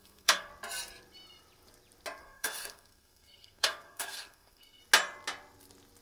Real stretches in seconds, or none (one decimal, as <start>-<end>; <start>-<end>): 0.5-2.2; 4.8-6.0